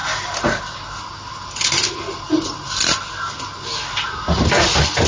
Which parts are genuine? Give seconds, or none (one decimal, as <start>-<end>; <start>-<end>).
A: 0.0-5.1